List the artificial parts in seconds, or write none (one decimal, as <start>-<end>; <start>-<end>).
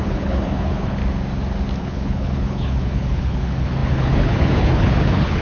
0.0-1.0; 1.8-5.4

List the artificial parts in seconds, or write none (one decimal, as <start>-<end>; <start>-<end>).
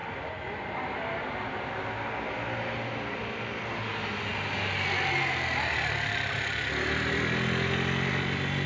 none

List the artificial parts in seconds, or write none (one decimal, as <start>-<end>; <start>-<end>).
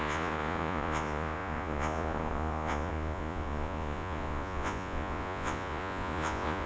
0.0-6.7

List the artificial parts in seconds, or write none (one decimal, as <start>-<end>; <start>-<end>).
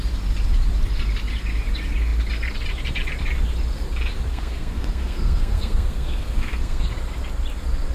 4.3-6.9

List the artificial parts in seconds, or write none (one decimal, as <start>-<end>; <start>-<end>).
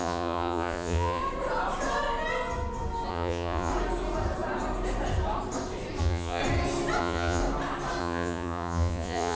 0.0-1.2; 3.1-3.7; 6.0-6.4; 7.0-7.4; 8.0-9.3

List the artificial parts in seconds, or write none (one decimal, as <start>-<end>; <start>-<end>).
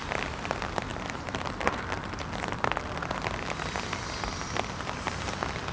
0.9-1.8